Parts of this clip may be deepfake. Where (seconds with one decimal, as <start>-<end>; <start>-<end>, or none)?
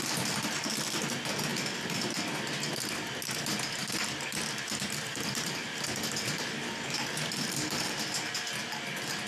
1.5-2.2; 3.8-8.3